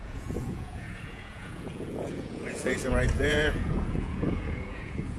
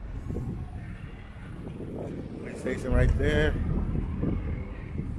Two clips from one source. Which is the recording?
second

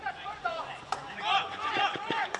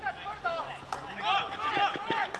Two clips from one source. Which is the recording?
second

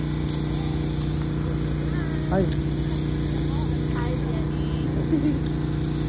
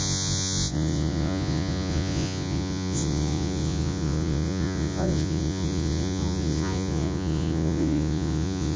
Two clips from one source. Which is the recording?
first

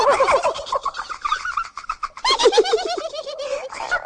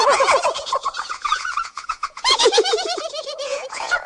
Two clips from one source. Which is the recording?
first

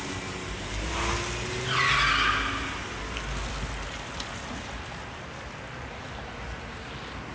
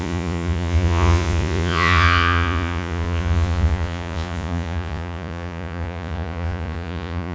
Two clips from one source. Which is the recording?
first